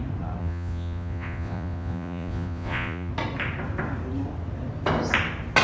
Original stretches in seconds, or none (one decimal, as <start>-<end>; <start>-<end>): 0.0-0.4; 3.1-5.6